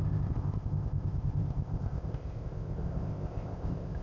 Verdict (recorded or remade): remade